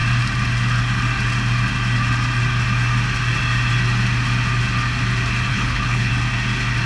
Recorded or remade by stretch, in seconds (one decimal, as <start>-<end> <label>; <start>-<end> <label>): 0.0-5.5 recorded; 5.5-6.1 remade; 6.1-6.9 recorded